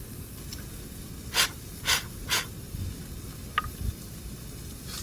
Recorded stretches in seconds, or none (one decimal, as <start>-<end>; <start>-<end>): 0.0-5.0